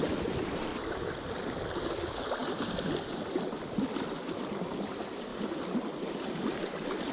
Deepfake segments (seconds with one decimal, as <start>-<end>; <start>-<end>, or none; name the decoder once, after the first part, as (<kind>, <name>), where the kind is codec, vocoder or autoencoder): 0.7-1.8 (vocoder, BigVGAN v2)